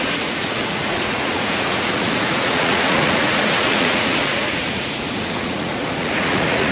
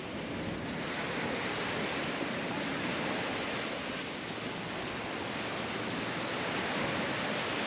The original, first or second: second